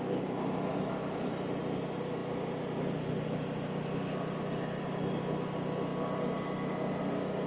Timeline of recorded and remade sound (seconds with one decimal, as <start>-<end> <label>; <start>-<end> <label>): 0.0-0.7 recorded; 0.7-1.3 remade; 1.3-7.5 recorded